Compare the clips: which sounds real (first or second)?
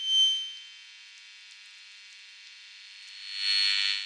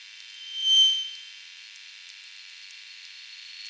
first